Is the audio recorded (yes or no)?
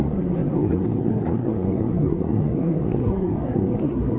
no